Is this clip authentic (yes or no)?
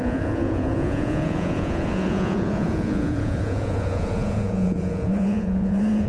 no